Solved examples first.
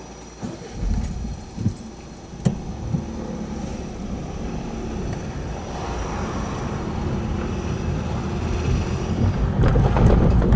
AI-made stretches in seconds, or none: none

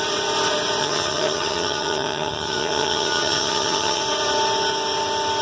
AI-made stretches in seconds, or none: 0.8-4.0 (vocoder, HiFi-GAN)

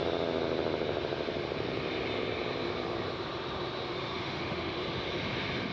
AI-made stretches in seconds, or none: 4.1-4.8 (autoencoder, DAC-VAE)

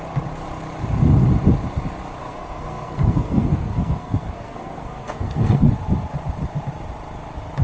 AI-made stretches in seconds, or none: 2.2-5.7 (codec, SNAC)